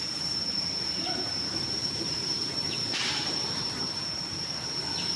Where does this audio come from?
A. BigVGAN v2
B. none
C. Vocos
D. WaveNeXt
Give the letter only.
A